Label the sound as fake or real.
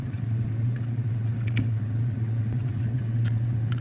fake